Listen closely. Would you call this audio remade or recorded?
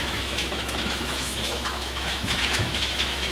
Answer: remade